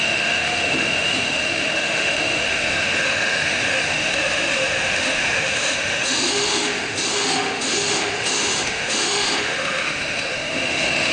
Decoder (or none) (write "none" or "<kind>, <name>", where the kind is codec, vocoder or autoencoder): autoencoder, DAC-VAE